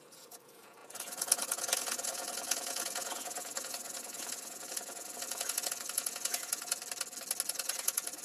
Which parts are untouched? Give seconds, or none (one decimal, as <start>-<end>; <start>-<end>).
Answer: 6.8-7.5